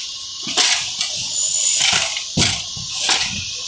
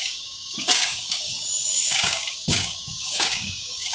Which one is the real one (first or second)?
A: first